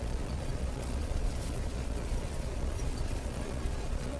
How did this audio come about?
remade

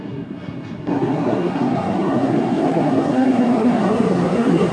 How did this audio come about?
remade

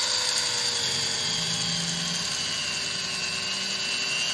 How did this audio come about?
recorded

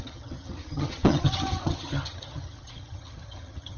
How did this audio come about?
remade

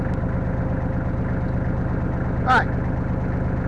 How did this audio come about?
recorded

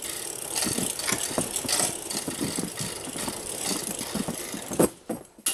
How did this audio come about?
recorded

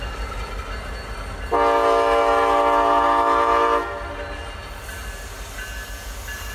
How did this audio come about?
recorded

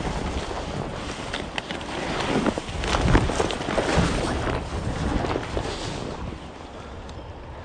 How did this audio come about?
recorded